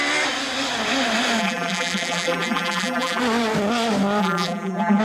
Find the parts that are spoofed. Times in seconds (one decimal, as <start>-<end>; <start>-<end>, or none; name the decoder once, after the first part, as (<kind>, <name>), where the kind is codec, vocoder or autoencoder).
1.4-3.2 (vocoder, BigVGAN v2); 4.2-5.0